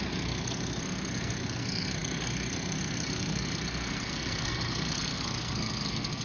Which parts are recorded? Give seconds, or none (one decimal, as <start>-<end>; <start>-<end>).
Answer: none

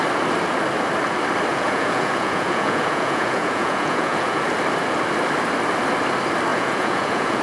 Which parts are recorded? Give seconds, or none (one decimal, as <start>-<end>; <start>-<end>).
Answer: 0.0-1.5; 4.4-6.5

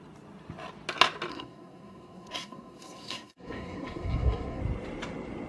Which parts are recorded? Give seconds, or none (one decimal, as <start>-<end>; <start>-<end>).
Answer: 0.0-1.3; 4.6-5.5

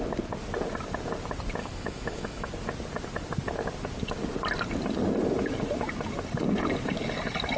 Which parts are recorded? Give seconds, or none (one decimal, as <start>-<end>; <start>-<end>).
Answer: 0.0-1.6; 2.5-7.6